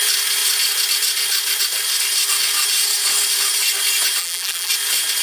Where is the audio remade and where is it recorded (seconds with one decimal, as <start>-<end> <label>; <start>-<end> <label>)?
0.0-4.2 recorded; 4.2-4.7 remade; 4.7-5.2 recorded